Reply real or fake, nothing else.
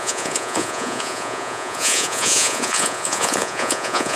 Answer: fake